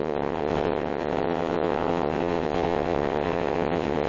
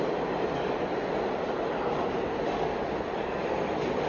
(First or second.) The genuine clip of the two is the second